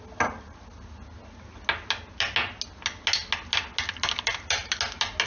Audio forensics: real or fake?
real